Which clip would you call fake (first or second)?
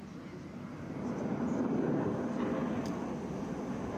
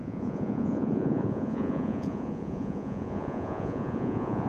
second